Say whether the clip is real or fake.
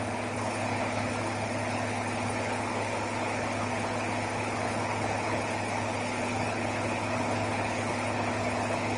fake